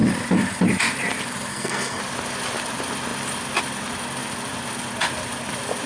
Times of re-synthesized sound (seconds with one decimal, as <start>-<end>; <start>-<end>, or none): 1.5-2.0

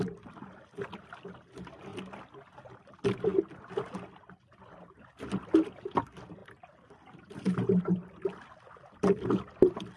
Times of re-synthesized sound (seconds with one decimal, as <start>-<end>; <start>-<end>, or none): none

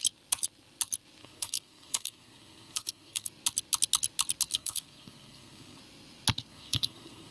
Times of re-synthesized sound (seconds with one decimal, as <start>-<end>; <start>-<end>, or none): 1.2-3.3; 4.5-5.8; 6.5-7.3

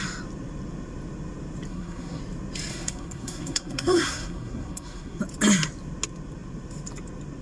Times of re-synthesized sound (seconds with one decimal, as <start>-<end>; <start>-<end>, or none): 1.7-2.2; 2.7-5.2

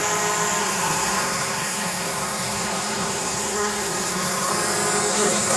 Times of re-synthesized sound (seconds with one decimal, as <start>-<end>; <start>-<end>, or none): 0.6-4.5; 5.1-5.6

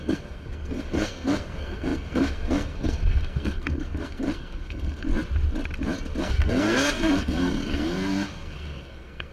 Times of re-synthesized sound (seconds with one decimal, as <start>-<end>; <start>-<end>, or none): 0.0-5.1; 6.2-9.3

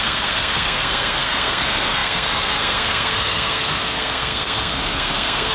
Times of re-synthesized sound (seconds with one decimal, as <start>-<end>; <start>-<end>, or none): 0.0-5.5

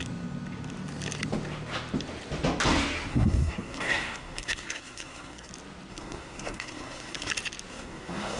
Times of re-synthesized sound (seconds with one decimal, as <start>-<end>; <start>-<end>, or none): 3.1-5.5; 5.9-7.3; 7.7-8.4